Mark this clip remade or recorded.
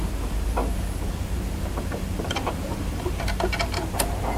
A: remade